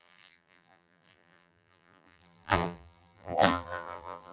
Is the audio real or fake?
fake